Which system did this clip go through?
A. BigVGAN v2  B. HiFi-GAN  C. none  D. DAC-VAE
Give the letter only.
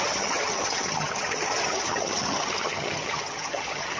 B